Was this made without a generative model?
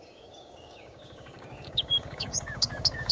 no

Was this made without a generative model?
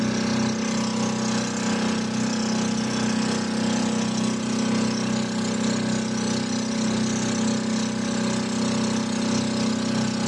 yes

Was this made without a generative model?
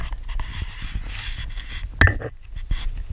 yes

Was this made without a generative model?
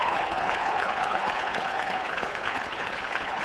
no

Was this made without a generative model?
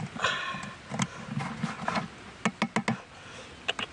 yes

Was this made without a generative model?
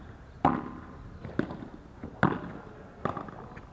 yes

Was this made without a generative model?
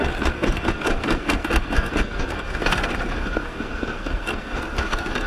no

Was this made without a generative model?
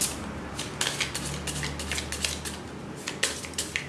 yes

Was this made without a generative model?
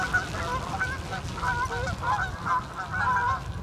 yes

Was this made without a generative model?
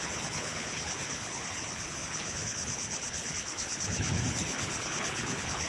no